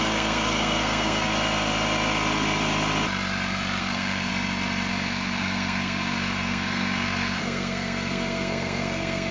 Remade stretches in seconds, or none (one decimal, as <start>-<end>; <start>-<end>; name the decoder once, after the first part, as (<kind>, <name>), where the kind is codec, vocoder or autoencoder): 0.0-1.3 (codec, SNAC); 3.8-4.3; 4.9-9.3

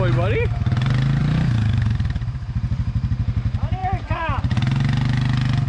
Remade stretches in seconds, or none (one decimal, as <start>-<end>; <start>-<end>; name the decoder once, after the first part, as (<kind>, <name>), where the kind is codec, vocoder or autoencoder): 1.2-3.1 (vocoder, BigVGAN v2)

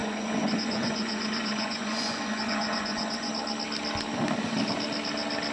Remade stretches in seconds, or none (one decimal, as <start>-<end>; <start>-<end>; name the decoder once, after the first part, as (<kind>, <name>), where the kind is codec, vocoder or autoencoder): 0.0-3.3 (vocoder, Vocos)

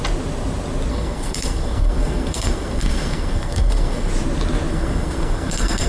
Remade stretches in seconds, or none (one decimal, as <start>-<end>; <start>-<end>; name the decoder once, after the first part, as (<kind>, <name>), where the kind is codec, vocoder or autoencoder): 0.9-4.1 (codec, SNAC); 4.7-5.9

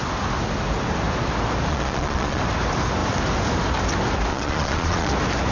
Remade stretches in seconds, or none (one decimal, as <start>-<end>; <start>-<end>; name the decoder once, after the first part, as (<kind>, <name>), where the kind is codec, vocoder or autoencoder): 1.7-2.4 (vocoder, Vocos); 4.3-5.1

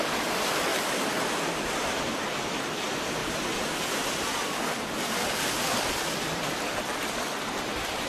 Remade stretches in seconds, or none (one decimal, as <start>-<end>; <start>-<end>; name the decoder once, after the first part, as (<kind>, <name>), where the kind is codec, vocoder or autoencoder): 0.0-0.7 (vocoder, BigVGAN v2); 1.4-3.2; 4.9-6.9; 7.5-8.1